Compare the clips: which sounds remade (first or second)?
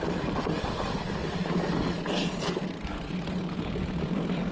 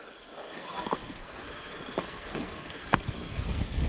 second